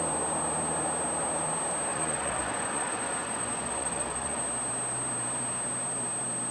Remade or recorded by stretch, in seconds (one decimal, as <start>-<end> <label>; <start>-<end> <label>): 0.0-1.9 recorded; 1.9-4.4 remade; 4.4-6.5 recorded